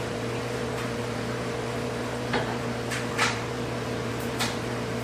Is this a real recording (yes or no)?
no